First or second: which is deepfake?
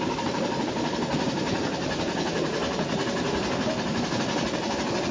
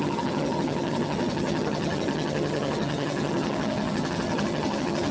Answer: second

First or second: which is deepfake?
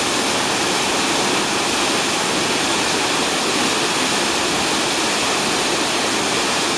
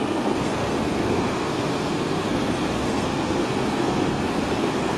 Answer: second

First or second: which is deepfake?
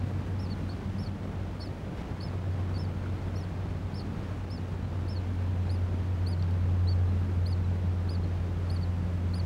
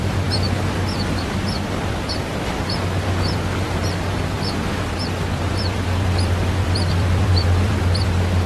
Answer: second